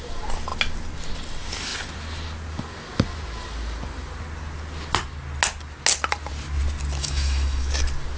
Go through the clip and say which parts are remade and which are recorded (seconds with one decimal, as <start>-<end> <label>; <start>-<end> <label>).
0.0-7.0 recorded; 7.0-7.7 remade; 7.7-8.2 recorded